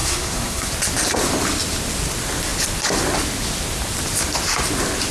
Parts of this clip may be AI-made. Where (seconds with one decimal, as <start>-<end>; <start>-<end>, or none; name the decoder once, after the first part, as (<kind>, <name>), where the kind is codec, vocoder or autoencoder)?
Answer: 0.0-0.7 (codec, SNAC)